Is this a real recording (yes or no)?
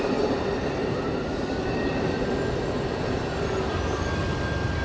yes